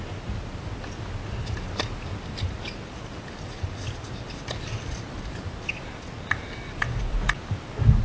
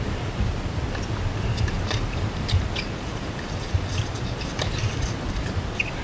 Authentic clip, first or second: first